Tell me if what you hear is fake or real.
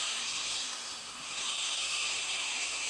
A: fake